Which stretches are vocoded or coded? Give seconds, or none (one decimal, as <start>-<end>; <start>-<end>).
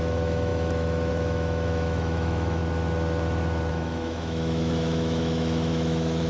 0.0-2.6; 3.7-6.3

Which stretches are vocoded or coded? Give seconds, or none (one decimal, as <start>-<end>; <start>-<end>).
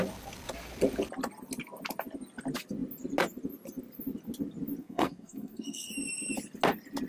4.8-5.9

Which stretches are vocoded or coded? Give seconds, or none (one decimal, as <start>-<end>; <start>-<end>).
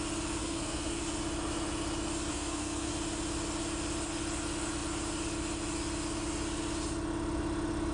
0.4-1.0; 2.3-2.9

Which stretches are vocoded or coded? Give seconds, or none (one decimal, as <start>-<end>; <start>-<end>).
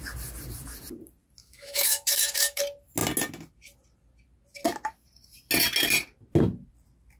1.4-2.6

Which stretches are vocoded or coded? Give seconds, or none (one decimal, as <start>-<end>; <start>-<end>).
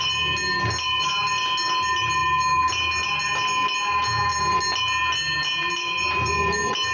none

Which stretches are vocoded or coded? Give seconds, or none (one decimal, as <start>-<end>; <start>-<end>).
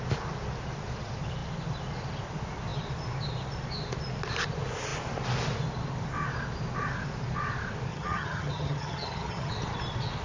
7.9-9.5